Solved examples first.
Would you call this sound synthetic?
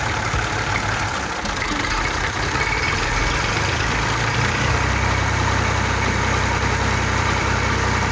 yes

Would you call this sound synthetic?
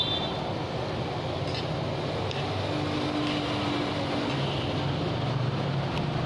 no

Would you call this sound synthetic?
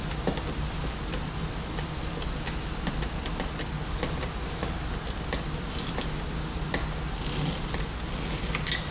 no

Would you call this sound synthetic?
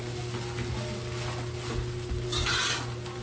no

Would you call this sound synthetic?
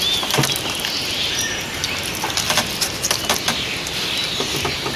no